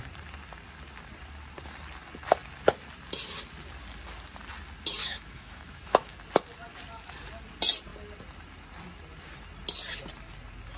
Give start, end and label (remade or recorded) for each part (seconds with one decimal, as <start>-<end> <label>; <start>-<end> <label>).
0.0-5.0 recorded; 5.0-6.1 remade; 6.1-10.8 recorded